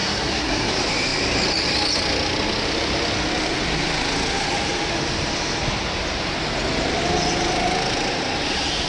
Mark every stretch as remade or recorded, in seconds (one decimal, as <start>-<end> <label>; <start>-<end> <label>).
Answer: 0.0-0.7 remade; 0.7-8.9 recorded